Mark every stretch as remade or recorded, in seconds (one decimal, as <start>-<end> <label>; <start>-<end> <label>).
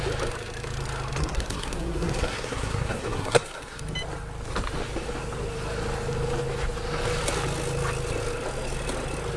0.0-1.2 recorded; 1.2-3.8 remade; 3.8-9.4 recorded